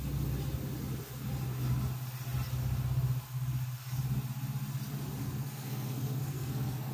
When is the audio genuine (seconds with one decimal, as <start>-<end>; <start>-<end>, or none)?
0.0-5.2